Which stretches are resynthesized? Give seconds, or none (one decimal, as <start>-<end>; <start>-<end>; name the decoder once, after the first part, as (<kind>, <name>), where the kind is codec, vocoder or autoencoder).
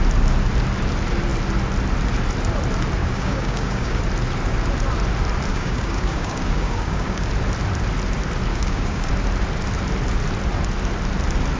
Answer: 3.0-4.0 (codec, DAC); 5.5-7.3; 8.5-9.1